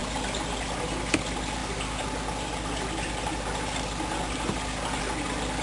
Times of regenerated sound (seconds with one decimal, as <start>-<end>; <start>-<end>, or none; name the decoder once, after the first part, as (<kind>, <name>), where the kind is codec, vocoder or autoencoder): none